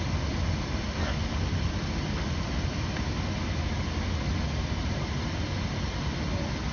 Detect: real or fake real